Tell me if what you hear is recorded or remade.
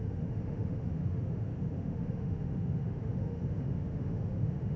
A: remade